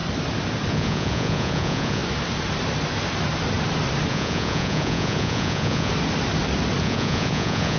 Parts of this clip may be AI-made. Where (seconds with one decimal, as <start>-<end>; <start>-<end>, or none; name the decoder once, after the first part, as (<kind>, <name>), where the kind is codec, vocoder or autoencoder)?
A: 0.7-2.0 (vocoder, Vocos); 4.1-5.9; 6.8-7.8